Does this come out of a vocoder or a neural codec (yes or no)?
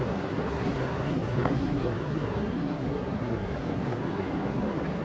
yes